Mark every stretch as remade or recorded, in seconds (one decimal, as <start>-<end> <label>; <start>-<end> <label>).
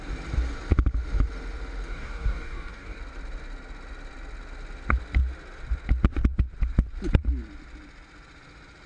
0.0-1.9 recorded; 1.9-3.0 remade; 3.0-8.9 recorded